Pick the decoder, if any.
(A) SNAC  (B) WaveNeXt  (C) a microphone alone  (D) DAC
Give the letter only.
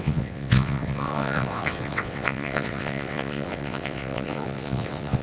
B